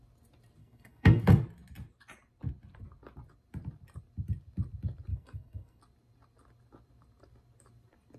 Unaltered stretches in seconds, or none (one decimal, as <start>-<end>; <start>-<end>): 0.0-0.6; 1.2-5.1; 5.8-8.2